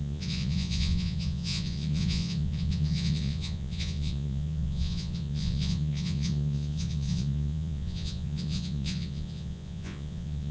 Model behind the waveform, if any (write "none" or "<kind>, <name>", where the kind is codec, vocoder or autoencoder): vocoder, Vocos